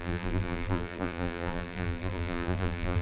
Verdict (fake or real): fake